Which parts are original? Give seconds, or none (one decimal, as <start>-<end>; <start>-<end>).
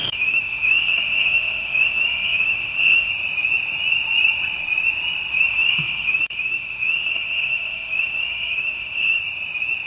3.1-5.5; 9.2-9.9